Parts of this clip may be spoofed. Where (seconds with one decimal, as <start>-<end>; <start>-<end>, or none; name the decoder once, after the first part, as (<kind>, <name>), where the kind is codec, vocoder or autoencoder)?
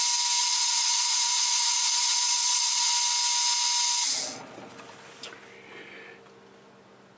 0.4-2.9 (vocoder, Vocos)